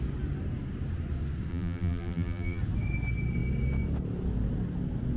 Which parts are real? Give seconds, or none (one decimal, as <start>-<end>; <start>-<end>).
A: 0.0-1.5; 2.6-5.2